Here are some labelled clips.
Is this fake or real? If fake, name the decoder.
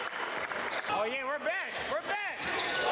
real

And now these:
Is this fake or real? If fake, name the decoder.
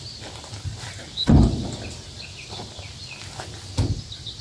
real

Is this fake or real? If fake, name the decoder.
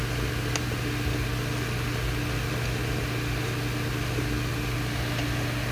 real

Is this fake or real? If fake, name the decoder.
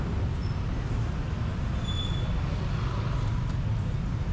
real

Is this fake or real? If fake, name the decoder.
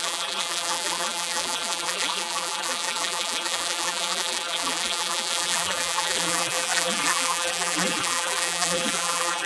fake, vocoder, BigVGAN v2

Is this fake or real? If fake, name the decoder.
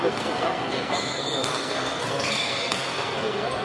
fake, codec, SNAC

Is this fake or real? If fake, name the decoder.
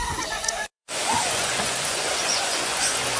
fake, vocoder, Vocos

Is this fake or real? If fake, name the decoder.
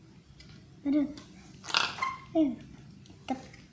real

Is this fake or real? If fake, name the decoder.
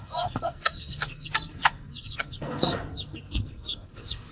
fake, codec, SNAC